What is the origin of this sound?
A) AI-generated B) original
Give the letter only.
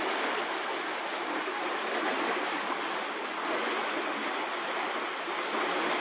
B